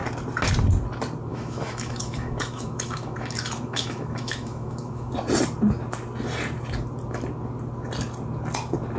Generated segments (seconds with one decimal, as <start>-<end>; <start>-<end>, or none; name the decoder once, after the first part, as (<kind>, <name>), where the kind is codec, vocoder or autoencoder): 1.3-5.1 (autoencoder, DAC-VAE)